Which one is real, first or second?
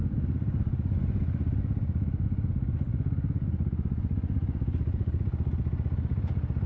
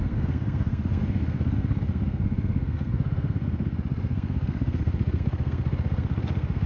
first